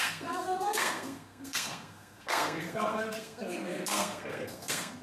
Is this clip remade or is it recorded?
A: remade